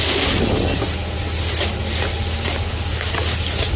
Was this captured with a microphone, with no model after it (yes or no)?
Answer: yes